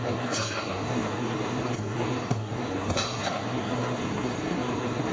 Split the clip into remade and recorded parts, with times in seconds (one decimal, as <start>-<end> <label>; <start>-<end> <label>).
0.0-5.1 remade